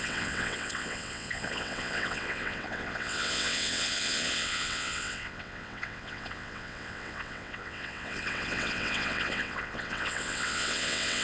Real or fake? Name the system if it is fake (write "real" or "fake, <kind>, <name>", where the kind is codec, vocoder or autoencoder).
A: fake, vocoder, WaveNeXt